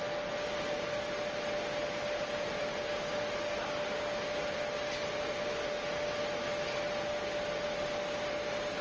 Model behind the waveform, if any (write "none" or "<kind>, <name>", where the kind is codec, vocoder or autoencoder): none